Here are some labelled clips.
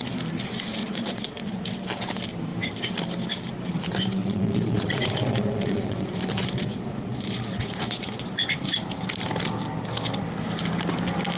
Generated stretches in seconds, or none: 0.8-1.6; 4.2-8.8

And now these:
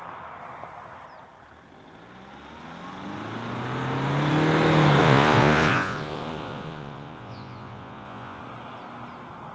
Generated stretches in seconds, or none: 5.0-8.4

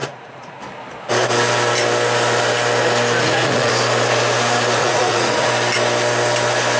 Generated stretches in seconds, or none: 0.0-0.6; 3.2-3.7; 4.8-5.5